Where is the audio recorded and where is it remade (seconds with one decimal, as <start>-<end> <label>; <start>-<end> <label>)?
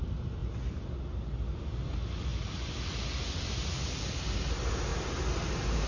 0.0-5.9 recorded